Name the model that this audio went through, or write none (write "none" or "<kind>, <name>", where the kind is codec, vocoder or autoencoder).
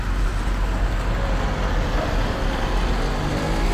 none